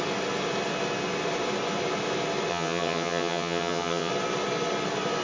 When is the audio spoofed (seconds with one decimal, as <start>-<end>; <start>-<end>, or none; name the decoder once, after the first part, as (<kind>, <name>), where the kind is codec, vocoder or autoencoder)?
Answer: 2.5-4.1 (vocoder, HiFi-GAN)